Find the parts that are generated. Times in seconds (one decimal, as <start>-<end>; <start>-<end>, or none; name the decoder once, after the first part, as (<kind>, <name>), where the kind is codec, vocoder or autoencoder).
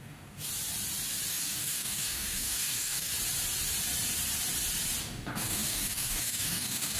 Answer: 0.0-0.5 (codec, DAC); 1.3-3.1; 5.0-7.0